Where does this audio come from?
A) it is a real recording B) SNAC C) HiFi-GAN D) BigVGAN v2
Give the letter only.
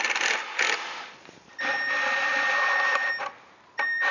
D